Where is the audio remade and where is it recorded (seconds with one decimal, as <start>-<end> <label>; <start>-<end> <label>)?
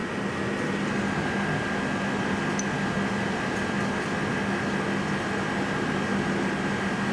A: 0.0-7.1 recorded